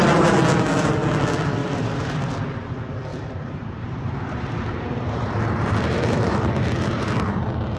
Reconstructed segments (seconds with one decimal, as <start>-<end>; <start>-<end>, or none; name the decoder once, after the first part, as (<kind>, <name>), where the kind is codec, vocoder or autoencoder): 1.6-2.3 (vocoder, BigVGAN v2); 3.1-7.8

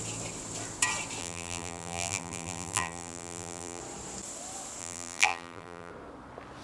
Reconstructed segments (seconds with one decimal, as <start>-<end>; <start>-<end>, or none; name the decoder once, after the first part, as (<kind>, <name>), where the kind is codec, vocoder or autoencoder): 1.2-3.8 (vocoder, BigVGAN v2); 4.8-5.9

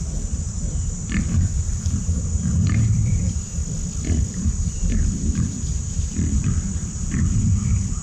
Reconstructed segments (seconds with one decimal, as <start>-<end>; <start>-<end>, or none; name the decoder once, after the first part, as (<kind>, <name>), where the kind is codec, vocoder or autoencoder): 0.0-3.6 (vocoder, BigVGAN v2); 4.3-8.0